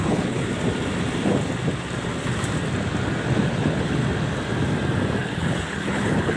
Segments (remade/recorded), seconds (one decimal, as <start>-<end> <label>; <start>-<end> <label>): 0.0-0.5 remade; 0.5-3.5 recorded; 3.5-4.0 remade; 4.0-5.2 recorded; 5.2-6.4 remade